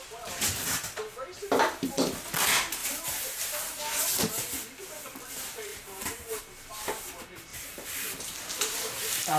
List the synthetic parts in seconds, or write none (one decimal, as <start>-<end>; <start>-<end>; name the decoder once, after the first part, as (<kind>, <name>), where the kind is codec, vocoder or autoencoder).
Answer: 2.8-3.8 (vocoder, BigVGAN v2); 5.7-6.4; 7.5-9.4